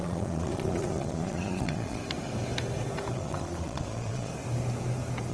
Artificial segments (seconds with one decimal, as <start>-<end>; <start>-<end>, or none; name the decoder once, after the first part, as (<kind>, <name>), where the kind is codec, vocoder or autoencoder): 0.0-2.0 (vocoder, Vocos); 3.1-4.3